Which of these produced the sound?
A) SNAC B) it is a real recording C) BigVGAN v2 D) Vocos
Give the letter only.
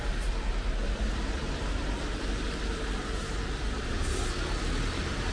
B